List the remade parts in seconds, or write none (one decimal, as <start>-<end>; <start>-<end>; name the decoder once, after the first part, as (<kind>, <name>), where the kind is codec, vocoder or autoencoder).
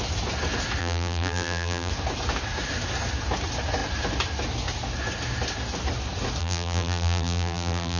0.8-1.9 (vocoder, BigVGAN v2); 6.4-8.0